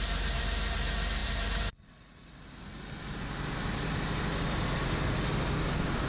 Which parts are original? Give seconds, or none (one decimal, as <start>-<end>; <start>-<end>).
0.0-6.1